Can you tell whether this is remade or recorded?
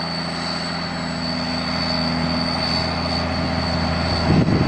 recorded